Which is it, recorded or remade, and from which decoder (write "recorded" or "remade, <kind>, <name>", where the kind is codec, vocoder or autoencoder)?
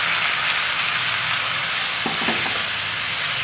recorded